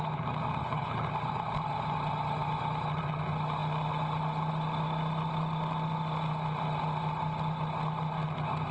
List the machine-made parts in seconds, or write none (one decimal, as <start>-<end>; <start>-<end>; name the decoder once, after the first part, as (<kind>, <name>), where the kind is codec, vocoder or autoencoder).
0.6-1.1 (codec, HILCodec)